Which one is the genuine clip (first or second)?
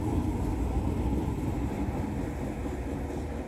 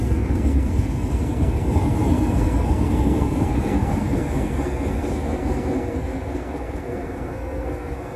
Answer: first